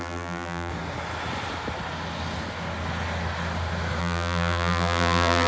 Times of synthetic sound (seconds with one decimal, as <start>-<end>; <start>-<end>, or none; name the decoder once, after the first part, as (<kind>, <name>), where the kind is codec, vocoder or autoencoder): 0.0-0.7 (vocoder, BigVGAN v2); 4.0-5.5